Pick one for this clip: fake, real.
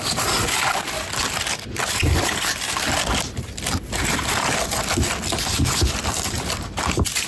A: real